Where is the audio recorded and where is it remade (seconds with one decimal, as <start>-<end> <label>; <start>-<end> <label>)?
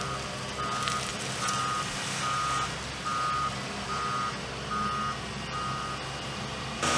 0.0-1.1 recorded; 1.1-1.6 remade; 1.6-3.1 recorded; 3.1-4.1 remade; 4.1-7.0 recorded